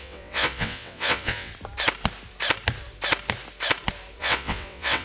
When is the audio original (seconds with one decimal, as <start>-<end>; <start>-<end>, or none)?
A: 1.5-4.2